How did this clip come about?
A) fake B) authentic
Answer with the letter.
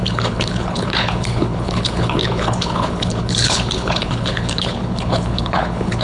A